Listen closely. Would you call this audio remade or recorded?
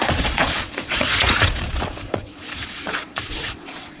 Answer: remade